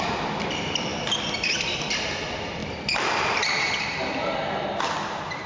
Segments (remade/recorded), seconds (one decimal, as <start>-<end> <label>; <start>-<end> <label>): 0.0-5.5 recorded